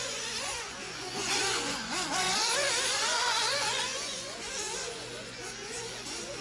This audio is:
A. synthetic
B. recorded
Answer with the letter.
A